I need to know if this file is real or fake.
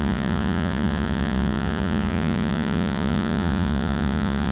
fake